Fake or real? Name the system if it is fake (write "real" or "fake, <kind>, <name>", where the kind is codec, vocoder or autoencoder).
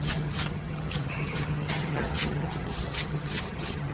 fake, vocoder, HiFi-GAN